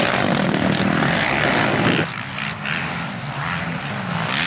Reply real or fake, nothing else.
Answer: fake